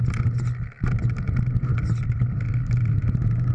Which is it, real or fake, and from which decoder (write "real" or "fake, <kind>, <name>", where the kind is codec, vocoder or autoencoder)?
real